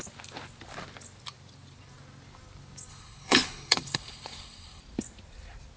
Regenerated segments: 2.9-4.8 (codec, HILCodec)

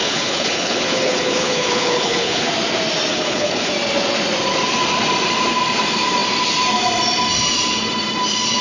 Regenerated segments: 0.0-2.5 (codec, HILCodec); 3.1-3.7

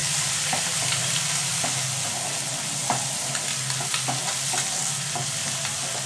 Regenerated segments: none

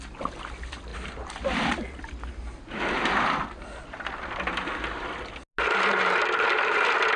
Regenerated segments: none